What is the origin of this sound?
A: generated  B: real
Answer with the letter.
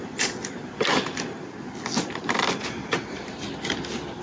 B